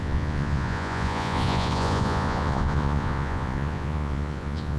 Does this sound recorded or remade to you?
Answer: remade